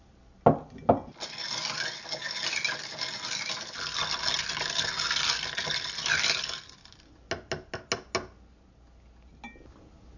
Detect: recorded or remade recorded